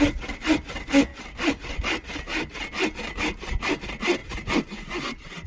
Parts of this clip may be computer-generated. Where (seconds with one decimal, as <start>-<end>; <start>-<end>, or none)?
4.2-5.0